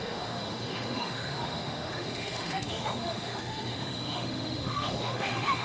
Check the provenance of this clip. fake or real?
fake